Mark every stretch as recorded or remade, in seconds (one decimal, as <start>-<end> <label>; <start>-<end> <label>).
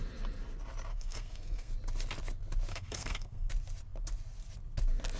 0.0-0.9 recorded; 0.9-1.7 remade; 1.7-2.7 recorded; 2.7-3.5 remade; 3.5-5.2 recorded